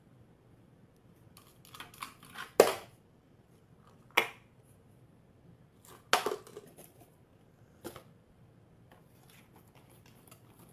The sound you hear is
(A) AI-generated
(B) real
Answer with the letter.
B